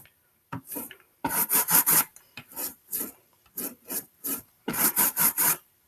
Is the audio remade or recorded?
remade